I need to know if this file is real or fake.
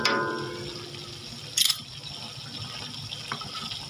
real